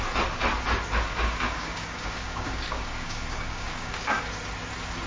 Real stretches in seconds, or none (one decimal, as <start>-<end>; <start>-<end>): 0.0-1.1; 4.2-5.1